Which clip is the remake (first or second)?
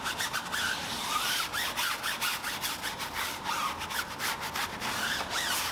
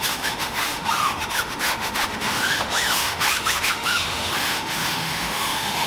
second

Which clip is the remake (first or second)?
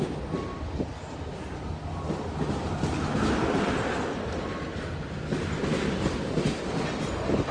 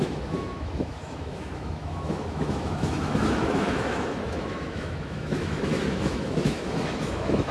second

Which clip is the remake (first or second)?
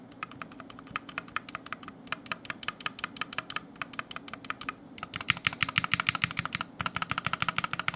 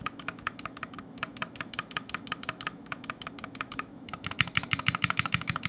second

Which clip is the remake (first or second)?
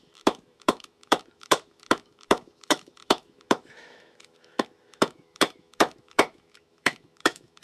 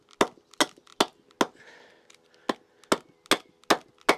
first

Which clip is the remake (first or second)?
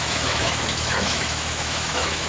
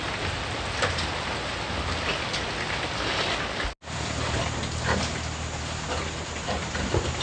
first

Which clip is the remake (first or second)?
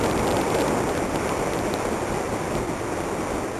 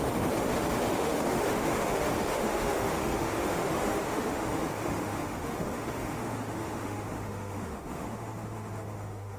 second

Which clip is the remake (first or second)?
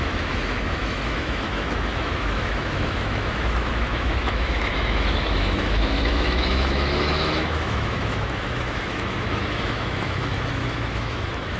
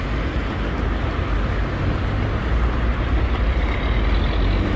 first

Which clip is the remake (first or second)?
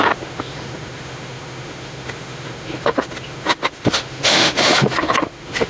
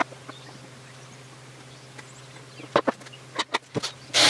first